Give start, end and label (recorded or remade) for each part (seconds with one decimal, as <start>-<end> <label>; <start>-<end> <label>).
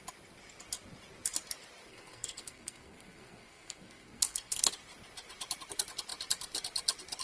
0.0-1.9 recorded; 1.9-4.7 remade; 4.7-7.2 recorded